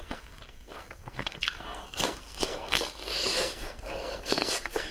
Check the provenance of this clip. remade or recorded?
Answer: remade